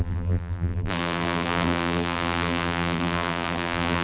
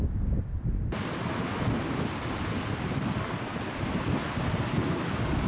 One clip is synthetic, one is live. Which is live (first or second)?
second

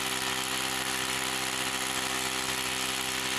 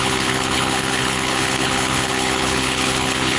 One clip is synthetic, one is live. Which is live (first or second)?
first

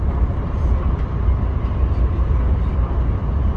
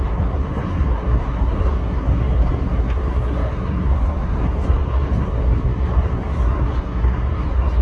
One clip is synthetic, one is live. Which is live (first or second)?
first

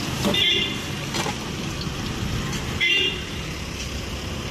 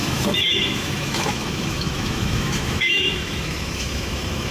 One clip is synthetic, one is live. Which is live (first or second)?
first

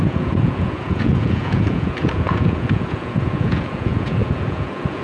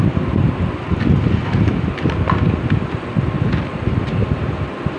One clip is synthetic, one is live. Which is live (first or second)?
second